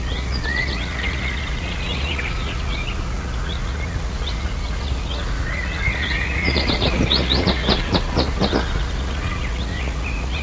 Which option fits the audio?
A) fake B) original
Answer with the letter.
A